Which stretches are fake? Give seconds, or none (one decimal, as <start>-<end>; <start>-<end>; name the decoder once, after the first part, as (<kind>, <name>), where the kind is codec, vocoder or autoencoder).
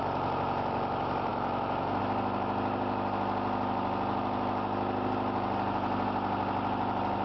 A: 1.3-2.0 (autoencoder, DAC-VAE)